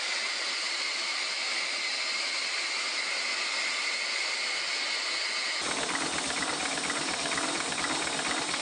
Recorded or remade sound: recorded